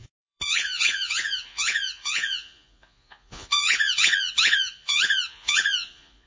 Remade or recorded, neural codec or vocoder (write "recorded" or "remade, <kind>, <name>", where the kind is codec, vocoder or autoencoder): remade, vocoder, Vocos